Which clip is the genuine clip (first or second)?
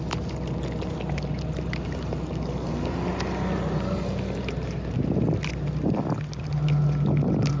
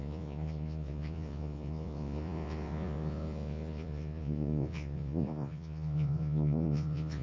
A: first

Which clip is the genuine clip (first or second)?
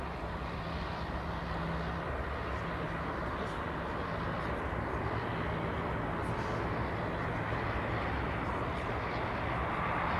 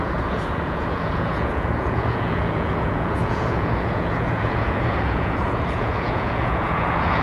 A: first